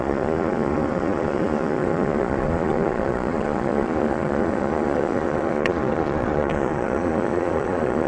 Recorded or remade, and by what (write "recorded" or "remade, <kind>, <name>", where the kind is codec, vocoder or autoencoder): remade, vocoder, Vocos